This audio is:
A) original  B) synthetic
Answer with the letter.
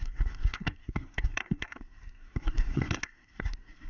B